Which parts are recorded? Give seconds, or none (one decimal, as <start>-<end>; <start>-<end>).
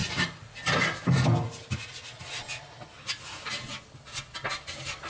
0.0-5.1